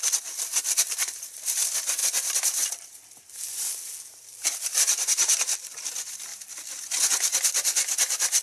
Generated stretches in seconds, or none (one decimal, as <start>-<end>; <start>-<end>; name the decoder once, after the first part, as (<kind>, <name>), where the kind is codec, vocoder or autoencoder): none